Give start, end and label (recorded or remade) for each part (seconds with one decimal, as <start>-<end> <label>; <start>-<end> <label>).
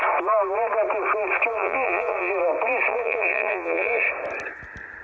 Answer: 0.0-1.5 recorded; 1.5-2.3 remade; 2.3-2.9 recorded; 2.9-4.0 remade; 4.0-5.0 recorded